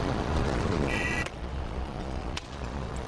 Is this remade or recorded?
remade